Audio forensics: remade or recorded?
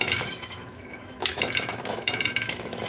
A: remade